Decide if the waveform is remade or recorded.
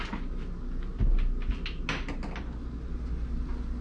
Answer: recorded